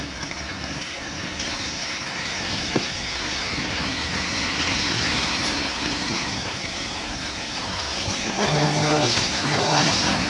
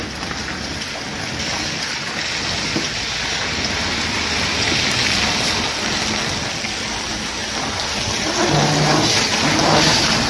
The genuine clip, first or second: second